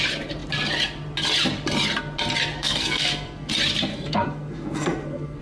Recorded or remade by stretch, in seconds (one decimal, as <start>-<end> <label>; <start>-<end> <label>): 0.0-2.5 recorded; 2.5-3.5 remade; 3.5-3.9 recorded; 3.9-5.4 remade